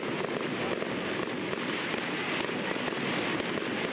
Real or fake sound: real